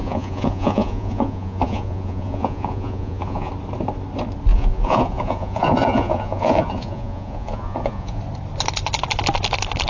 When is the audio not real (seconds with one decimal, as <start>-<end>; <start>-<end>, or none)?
0.0-3.5; 4.5-8.2